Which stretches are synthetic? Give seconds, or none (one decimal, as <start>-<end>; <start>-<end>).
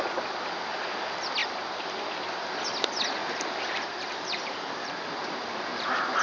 1.4-2.0; 3.2-6.2